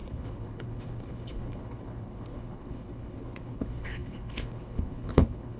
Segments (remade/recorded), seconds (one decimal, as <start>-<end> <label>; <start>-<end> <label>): 0.0-5.6 remade